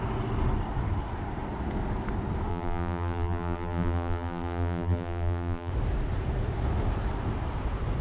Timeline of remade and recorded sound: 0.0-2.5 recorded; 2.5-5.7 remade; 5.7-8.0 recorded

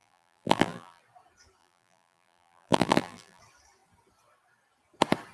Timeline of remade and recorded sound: 0.0-1.0 remade; 1.0-1.6 recorded; 1.6-3.4 remade; 3.4-5.3 recorded